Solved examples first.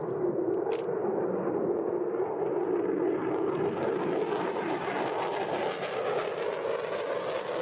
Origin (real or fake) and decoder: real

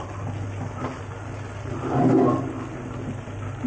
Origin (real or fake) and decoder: real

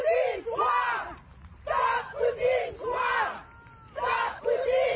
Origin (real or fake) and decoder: real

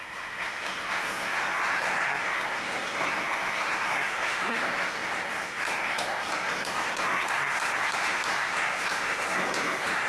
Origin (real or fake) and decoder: fake, codec, SNAC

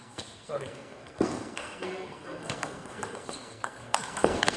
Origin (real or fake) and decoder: fake, codec, SNAC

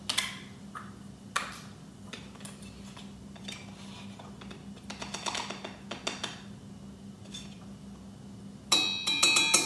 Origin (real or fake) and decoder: real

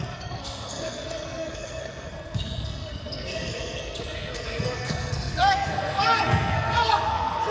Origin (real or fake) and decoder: fake, codec, SNAC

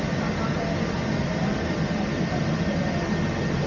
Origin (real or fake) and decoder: real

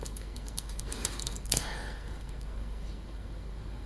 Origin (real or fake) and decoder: fake, codec, SNAC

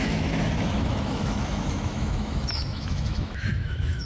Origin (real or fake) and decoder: fake, autoencoder, DAC-VAE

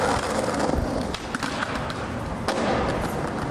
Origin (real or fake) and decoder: real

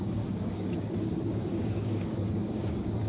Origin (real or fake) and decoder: fake, codec, DAC